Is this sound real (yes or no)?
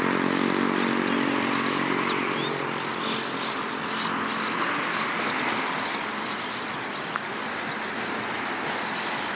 yes